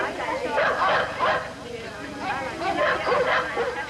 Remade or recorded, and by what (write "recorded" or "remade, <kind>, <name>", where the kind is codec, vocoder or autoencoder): recorded